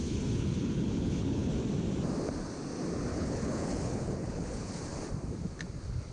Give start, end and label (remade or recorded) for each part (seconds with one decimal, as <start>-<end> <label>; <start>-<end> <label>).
0.0-1.5 remade; 1.5-3.1 recorded; 3.1-4.8 remade; 4.8-6.1 recorded